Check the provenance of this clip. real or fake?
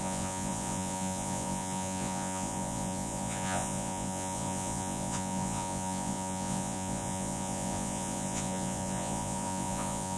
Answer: fake